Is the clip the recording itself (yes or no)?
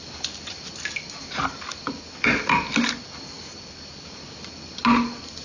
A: yes